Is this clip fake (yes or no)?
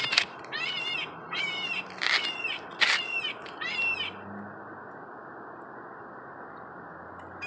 no